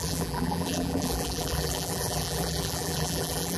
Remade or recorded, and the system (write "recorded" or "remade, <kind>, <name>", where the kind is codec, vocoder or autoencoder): remade, vocoder, BigVGAN v2